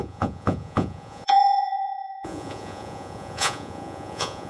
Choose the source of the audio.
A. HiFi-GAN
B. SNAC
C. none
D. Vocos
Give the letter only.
D